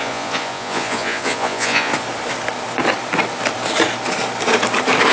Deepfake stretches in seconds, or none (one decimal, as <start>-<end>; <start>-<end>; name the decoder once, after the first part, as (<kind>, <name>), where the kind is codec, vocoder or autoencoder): 0.0-1.9 (vocoder, Vocos)